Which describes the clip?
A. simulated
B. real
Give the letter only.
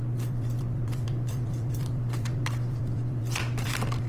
A